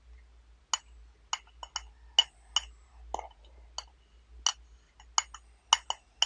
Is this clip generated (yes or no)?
no